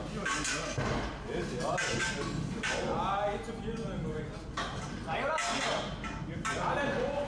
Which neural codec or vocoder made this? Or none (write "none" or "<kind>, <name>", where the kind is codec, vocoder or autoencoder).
none